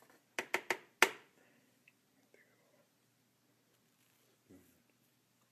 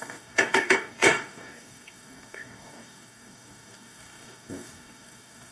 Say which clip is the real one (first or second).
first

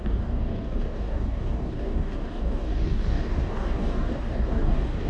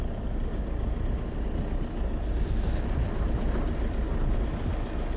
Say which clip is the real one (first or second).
second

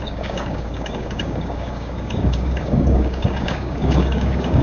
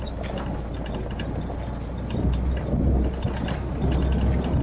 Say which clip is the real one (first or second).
second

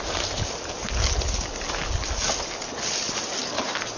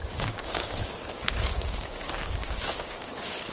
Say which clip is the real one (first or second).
first